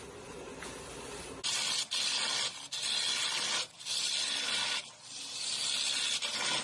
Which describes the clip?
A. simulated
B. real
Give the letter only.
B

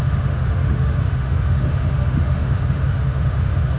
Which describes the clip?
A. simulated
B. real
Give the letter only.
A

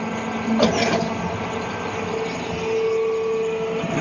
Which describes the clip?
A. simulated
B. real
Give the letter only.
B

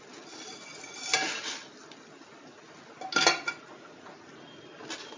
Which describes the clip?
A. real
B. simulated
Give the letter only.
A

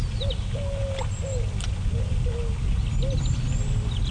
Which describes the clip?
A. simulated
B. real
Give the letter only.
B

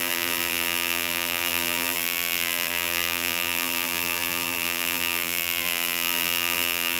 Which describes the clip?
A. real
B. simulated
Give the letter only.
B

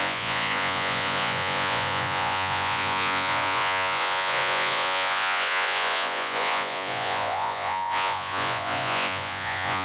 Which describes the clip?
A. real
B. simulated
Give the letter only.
B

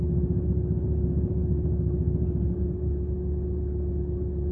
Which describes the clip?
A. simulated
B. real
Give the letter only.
B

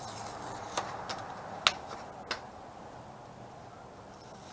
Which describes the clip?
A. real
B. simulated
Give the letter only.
A